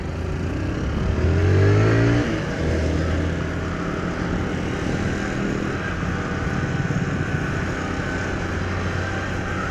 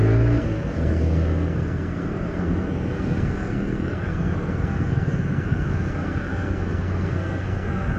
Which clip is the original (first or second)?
first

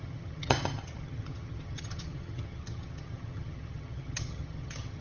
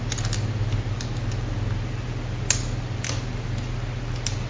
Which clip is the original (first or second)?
second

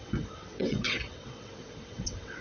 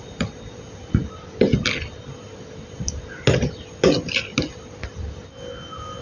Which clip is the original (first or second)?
second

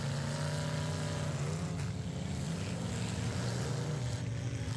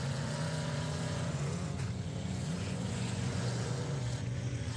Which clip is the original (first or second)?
first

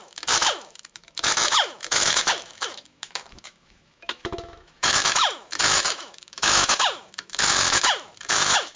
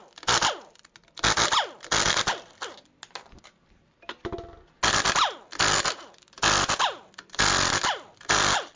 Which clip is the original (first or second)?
second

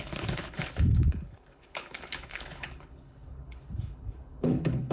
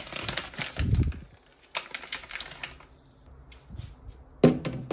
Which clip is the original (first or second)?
second